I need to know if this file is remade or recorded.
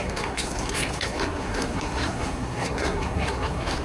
remade